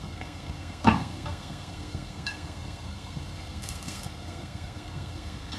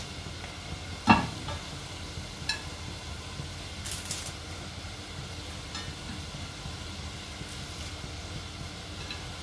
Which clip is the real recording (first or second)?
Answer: second